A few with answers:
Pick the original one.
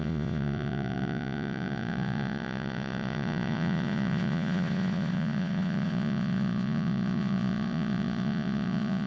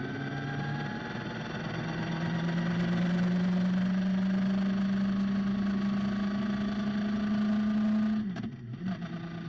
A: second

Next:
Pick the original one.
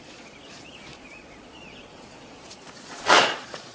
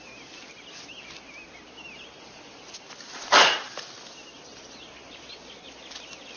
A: second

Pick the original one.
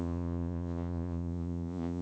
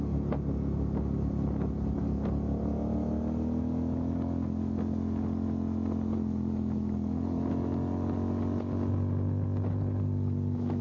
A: second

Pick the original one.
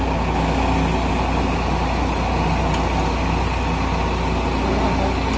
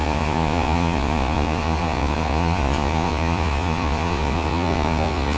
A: first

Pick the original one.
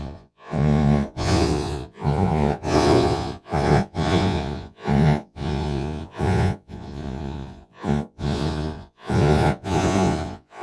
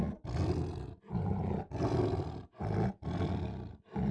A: second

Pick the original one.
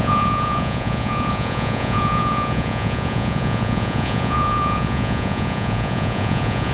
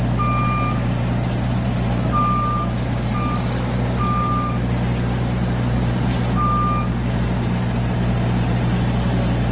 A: second